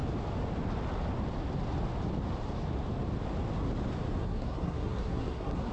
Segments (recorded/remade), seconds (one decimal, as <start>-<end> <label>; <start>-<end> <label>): 0.0-4.2 recorded; 4.2-5.7 remade